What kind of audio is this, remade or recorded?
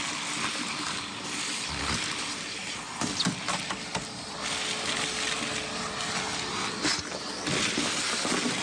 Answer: recorded